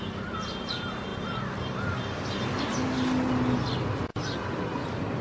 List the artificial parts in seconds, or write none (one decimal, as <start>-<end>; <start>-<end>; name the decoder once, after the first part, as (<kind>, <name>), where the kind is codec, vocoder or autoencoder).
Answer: 1.1-2.6 (vocoder, BigVGAN v2)